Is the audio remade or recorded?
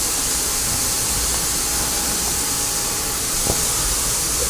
recorded